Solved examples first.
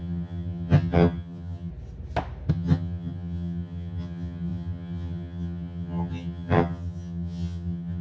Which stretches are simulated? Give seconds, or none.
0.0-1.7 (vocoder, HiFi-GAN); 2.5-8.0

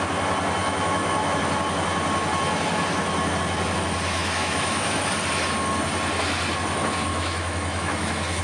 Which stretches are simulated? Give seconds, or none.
0.6-1.4 (autoencoder, DAC-VAE); 4.2-5.1; 7.1-8.4

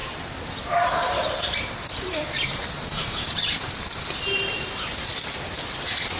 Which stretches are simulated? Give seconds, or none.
0.0-3.7 (vocoder, BigVGAN v2); 5.1-6.2

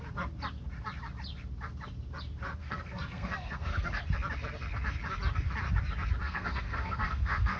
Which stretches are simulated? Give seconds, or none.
2.6-4.0 (codec, SNAC); 6.2-7.6

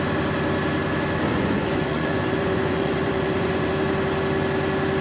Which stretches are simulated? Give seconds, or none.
1.3-3.7 (vocoder, Vocos)

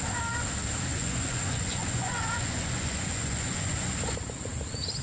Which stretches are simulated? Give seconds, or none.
0.9-3.9 (vocoder, Vocos)